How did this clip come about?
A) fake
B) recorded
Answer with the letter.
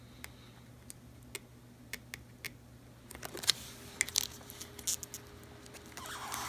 B